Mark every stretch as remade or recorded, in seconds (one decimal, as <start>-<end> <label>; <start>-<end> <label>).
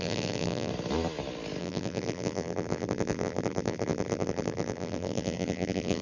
0.0-0.7 remade; 0.7-1.6 recorded; 1.6-6.0 remade